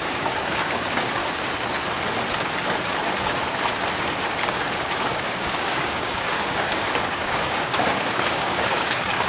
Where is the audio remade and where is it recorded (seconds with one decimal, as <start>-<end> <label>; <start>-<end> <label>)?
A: 0.0-1.2 remade; 1.2-5.0 recorded; 5.0-9.3 remade